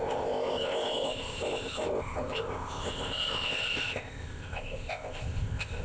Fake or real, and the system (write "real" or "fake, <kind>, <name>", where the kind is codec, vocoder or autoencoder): fake, codec, ZipCodec